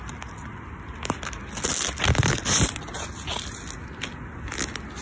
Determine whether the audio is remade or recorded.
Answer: recorded